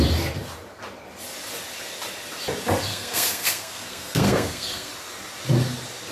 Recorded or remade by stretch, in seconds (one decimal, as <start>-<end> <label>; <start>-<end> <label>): 0.0-2.9 recorded; 2.9-4.9 remade; 4.9-6.1 recorded